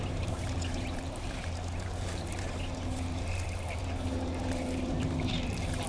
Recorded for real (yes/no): no